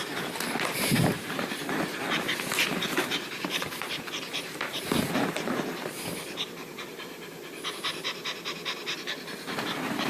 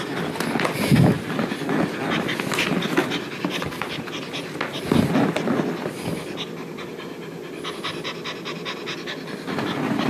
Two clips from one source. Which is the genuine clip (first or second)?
second